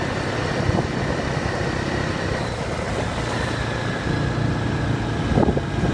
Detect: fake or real real